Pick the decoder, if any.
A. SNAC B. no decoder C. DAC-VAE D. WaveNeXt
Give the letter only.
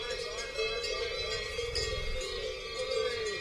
B